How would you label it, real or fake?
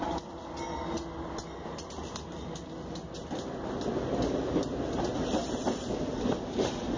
real